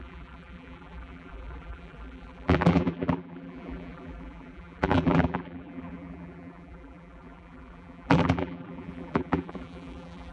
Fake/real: fake